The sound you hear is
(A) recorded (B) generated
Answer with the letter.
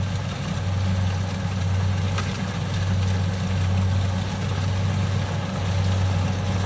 A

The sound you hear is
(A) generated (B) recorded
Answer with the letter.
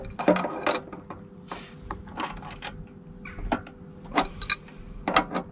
B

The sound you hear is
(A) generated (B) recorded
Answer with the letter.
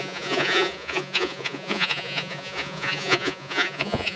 A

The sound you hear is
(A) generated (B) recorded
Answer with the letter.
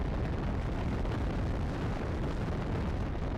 B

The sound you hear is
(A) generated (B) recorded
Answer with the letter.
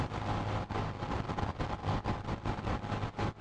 B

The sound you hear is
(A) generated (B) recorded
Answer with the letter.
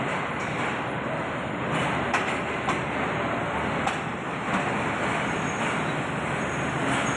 B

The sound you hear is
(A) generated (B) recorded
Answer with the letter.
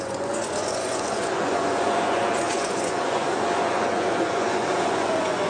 A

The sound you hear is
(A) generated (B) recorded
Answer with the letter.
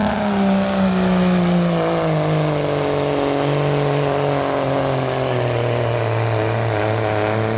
B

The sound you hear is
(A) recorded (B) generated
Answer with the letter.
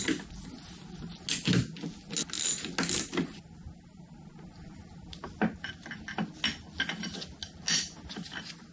A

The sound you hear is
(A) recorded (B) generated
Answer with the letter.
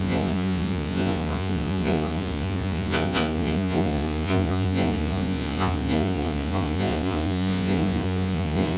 B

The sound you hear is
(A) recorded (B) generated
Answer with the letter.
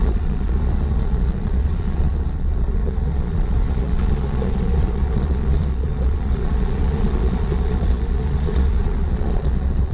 B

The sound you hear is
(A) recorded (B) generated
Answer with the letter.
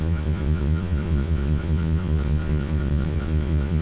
B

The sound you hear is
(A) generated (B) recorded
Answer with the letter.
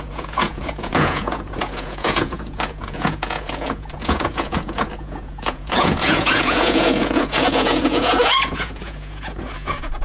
A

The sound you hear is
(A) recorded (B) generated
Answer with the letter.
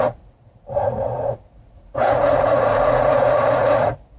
B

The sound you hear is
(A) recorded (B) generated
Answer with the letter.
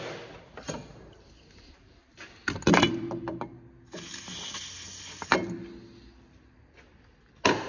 A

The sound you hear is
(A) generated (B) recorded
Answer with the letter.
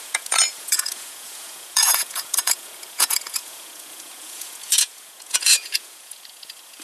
A